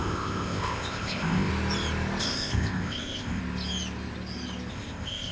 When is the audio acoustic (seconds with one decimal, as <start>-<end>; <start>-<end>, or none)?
1.5-2.2; 3.4-4.7